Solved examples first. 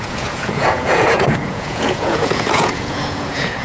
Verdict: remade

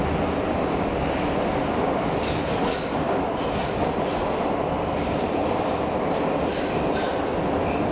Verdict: recorded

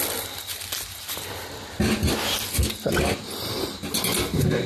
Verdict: recorded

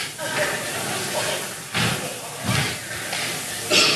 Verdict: recorded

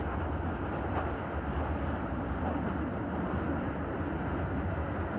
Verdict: recorded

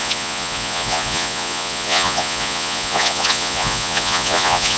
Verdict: remade